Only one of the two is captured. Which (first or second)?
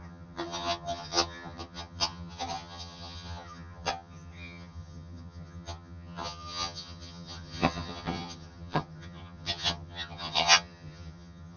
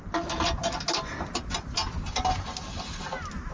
second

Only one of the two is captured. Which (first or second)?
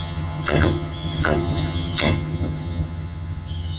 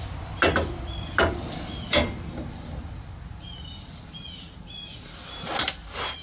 second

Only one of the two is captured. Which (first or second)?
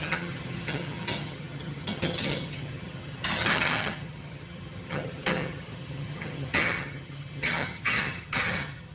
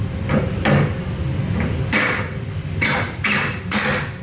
second